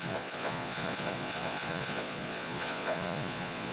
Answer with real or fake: fake